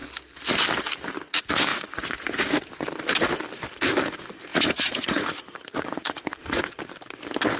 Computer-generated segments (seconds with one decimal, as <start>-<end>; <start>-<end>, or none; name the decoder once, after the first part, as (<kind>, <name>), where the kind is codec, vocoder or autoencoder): 1.7-2.7 (vocoder, Vocos); 4.5-6.6